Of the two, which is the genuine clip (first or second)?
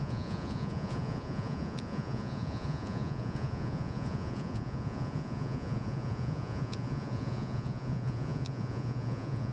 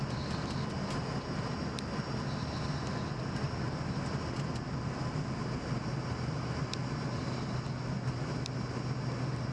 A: second